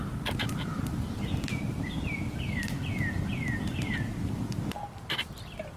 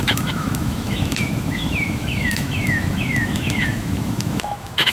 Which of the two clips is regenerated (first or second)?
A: second